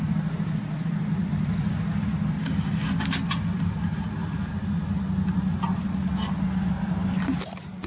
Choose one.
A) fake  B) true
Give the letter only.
B